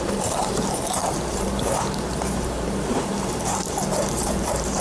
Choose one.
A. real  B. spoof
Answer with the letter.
B